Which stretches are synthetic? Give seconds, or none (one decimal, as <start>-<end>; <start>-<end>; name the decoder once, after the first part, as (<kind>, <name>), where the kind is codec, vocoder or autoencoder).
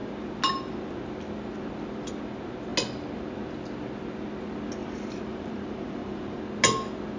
4.8-6.4 (vocoder, BigVGAN v2)